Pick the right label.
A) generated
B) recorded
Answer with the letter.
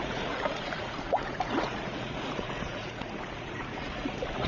A